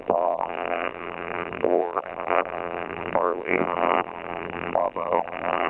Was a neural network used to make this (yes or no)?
yes